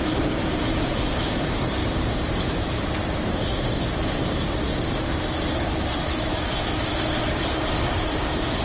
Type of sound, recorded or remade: remade